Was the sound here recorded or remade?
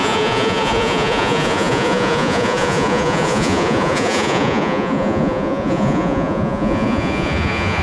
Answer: remade